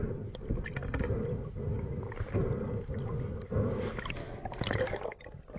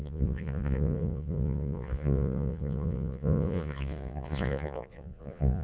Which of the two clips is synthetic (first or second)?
second